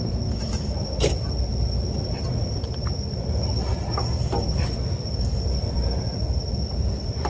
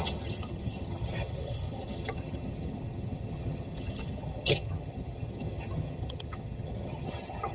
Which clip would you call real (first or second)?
first